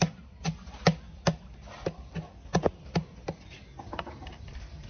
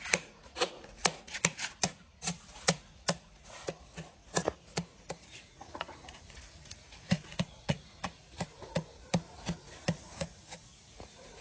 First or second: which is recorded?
first